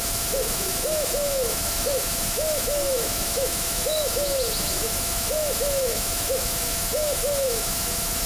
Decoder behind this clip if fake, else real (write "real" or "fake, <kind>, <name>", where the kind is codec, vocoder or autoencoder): fake, autoencoder, DAC-VAE